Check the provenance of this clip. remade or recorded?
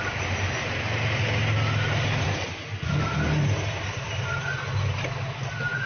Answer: recorded